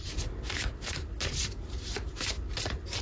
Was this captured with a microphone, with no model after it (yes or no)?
yes